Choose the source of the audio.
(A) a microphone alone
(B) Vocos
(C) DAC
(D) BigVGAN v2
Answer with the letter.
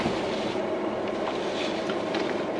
A